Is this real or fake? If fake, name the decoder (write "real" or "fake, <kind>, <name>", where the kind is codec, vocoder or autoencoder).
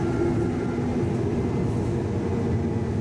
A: real